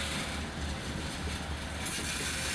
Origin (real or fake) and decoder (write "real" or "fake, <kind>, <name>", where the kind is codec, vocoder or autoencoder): real